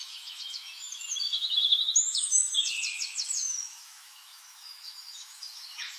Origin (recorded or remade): remade